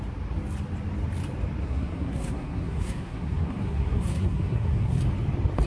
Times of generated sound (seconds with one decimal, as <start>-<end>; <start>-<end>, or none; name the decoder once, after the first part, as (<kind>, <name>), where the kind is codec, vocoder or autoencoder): 1.6-5.0 (codec, SNAC)